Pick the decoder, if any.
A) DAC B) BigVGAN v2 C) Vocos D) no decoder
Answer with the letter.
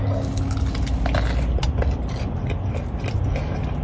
D